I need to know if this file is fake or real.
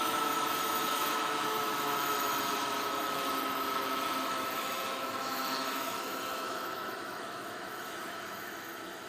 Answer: fake